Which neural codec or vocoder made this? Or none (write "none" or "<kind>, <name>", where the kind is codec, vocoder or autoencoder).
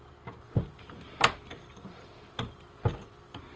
none